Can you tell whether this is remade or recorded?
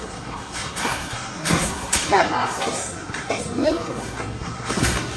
remade